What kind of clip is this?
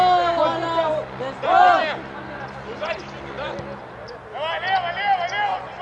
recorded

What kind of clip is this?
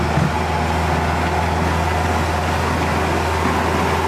recorded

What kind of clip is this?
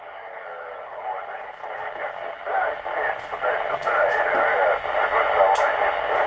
recorded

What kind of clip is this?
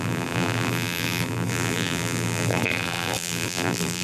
remade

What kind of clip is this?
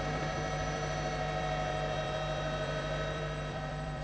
remade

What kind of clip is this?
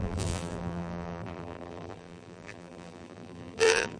remade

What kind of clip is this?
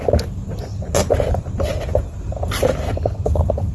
remade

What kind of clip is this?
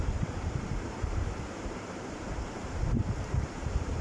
remade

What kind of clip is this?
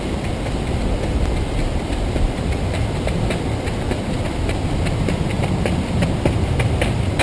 recorded